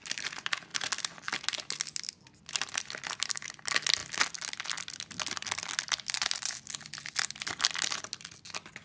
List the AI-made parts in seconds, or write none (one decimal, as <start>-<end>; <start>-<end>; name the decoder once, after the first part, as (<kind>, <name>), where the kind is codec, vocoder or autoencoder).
none